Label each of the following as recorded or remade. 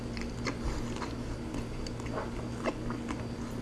recorded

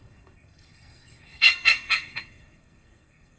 remade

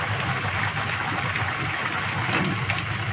recorded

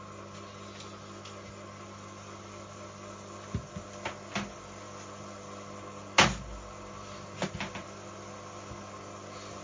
recorded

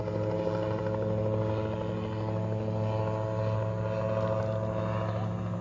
recorded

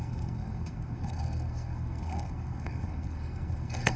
remade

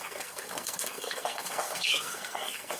remade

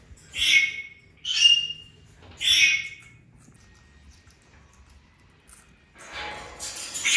recorded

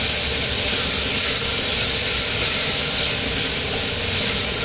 recorded